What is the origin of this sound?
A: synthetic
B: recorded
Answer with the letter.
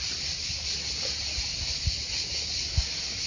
B